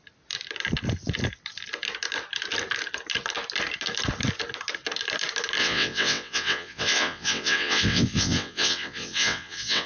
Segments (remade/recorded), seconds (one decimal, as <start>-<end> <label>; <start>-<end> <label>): 0.0-5.6 recorded; 5.6-9.9 remade